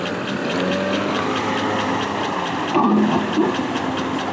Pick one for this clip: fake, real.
real